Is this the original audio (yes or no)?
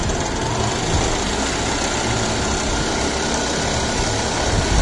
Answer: yes